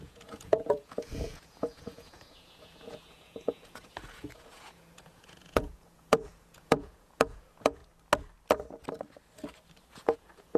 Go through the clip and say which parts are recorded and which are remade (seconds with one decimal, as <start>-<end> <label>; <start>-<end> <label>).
0.0-7.8 remade; 7.8-9.9 recorded; 9.9-10.6 remade